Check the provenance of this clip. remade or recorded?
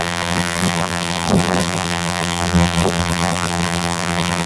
remade